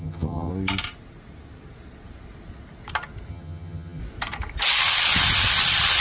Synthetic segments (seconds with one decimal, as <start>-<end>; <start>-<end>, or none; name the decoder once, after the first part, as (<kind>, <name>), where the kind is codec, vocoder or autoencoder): 0.0-0.5 (vocoder, HiFi-GAN); 3.3-4.0